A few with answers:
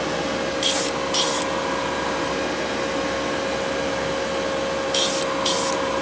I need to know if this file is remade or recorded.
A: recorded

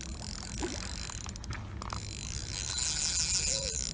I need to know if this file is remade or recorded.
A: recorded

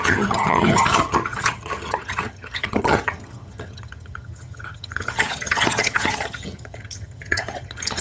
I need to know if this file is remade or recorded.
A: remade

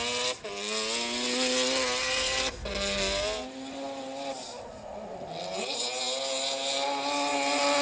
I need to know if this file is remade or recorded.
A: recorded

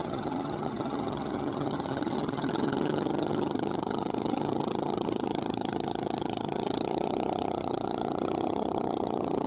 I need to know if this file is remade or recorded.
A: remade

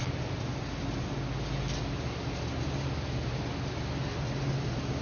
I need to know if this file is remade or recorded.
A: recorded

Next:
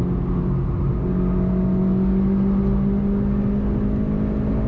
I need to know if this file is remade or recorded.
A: recorded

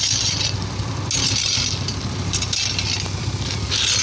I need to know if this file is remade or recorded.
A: recorded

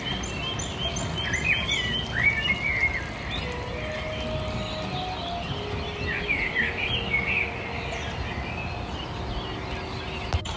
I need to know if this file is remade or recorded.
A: recorded